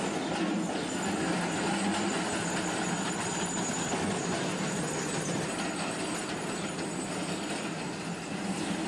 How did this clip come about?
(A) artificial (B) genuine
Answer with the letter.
B